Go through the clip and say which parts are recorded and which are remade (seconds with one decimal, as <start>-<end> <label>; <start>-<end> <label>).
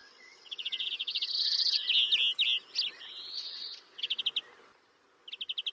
0.0-1.9 remade; 1.9-3.3 recorded; 3.3-4.2 remade; 4.2-5.7 recorded